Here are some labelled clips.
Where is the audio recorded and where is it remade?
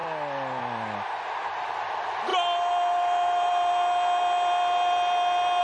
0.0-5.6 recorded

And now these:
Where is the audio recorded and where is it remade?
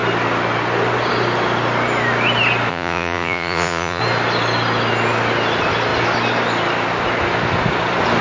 0.0-2.7 recorded; 2.7-4.0 remade; 4.0-8.2 recorded